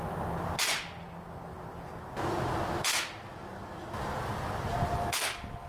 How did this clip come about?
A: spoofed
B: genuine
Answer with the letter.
B